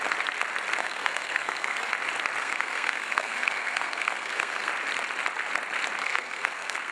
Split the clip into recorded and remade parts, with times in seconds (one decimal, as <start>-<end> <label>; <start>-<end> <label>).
0.0-0.8 recorded; 0.8-1.9 remade; 1.9-2.4 recorded; 2.4-4.7 remade; 4.7-6.0 recorded; 6.0-6.9 remade